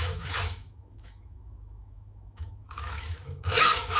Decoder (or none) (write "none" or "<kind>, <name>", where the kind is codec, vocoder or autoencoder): autoencoder, DAC-VAE